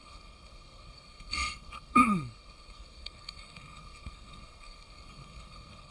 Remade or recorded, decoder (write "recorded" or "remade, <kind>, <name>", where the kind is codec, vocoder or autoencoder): remade, codec, SNAC